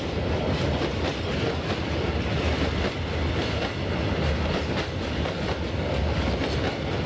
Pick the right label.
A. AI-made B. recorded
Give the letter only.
B